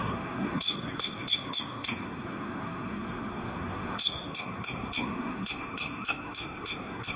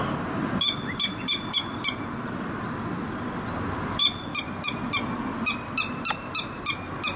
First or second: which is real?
second